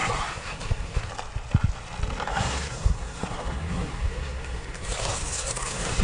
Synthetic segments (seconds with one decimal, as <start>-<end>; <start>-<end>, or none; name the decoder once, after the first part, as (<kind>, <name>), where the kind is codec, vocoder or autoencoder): 0.0-1.1 (codec, SNAC); 2.3-6.0